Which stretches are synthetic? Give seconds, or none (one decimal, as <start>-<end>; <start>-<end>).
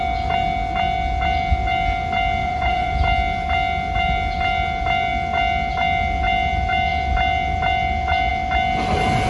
2.4-2.9